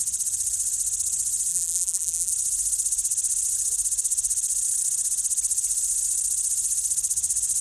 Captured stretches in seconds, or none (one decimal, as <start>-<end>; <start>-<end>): 0.0-1.5; 2.3-7.6

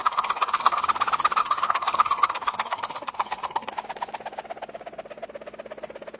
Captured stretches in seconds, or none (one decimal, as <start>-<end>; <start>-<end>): 0.8-1.4; 3.7-6.2

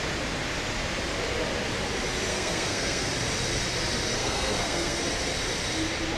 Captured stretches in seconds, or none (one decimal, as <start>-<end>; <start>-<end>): 0.0-2.3; 3.1-4.2; 5.0-6.2

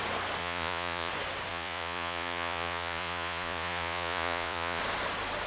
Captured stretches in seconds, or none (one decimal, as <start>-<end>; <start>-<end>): 0.0-0.4; 1.1-1.5; 4.8-5.5

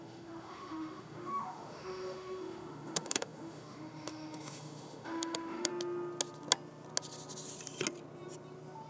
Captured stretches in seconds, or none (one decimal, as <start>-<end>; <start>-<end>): 5.7-8.9

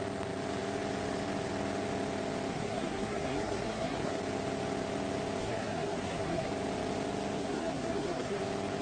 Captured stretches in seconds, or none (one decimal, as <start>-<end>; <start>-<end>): 0.0-2.5; 4.2-5.4; 6.5-7.4; 8.4-8.8